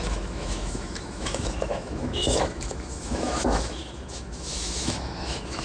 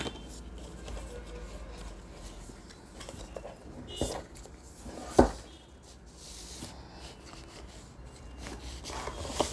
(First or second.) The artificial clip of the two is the first